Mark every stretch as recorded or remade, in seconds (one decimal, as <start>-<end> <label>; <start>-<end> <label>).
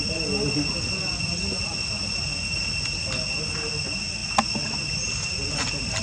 0.0-6.0 recorded